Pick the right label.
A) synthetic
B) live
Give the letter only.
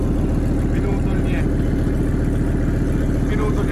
B